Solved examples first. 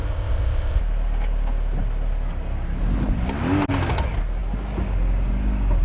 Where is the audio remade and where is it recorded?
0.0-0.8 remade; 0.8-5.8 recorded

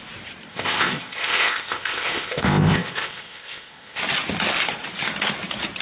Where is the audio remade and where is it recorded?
0.0-0.5 recorded; 0.5-4.0 remade; 4.0-5.8 recorded

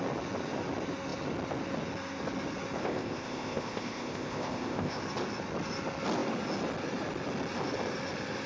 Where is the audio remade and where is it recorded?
0.0-2.8 recorded; 2.8-5.0 remade; 5.0-8.5 recorded

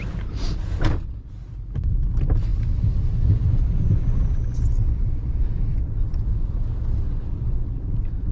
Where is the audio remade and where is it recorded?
0.0-8.3 recorded